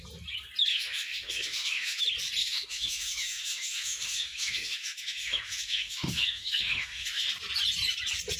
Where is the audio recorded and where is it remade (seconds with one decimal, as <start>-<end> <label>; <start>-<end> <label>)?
0.0-0.7 recorded; 0.7-2.0 remade; 2.0-2.4 recorded; 2.4-7.3 remade; 7.3-8.4 recorded